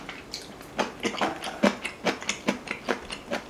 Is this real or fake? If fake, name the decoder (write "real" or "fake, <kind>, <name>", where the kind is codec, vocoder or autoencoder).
real